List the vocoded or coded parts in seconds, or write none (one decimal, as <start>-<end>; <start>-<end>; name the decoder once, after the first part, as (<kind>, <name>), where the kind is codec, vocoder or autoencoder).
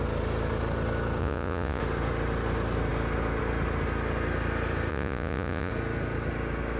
1.2-1.8 (vocoder, Vocos); 4.9-5.7